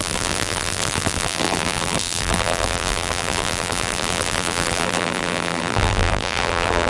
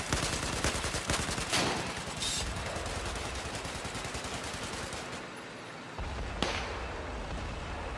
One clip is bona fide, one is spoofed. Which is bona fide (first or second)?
second